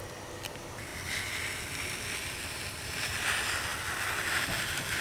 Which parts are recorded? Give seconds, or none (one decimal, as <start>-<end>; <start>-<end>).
0.0-5.0